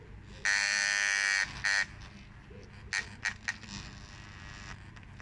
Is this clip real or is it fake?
real